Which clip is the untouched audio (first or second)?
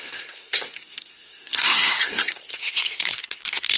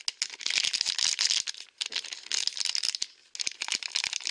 second